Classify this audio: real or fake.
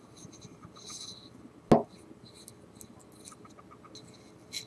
real